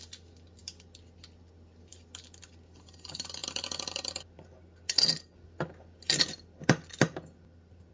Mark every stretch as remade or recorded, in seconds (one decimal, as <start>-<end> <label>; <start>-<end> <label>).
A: 0.0-7.9 recorded